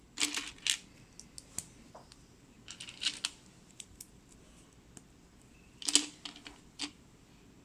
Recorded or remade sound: recorded